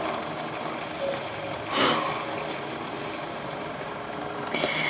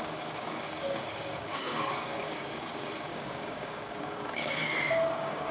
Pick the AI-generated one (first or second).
second